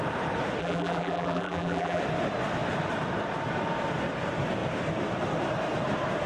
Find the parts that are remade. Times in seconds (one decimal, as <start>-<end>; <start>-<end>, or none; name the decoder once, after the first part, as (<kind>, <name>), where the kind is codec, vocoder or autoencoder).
0.6-2.0 (vocoder, BigVGAN v2)